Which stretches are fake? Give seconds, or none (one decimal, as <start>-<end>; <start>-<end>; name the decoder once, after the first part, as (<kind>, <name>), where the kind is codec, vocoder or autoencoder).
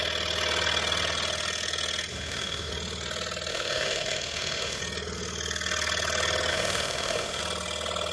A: 2.1-2.7 (autoencoder, DAC-VAE); 3.5-4.8; 6.5-7.4